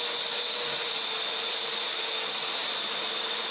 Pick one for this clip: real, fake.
real